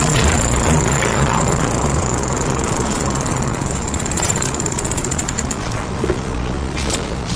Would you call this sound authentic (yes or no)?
no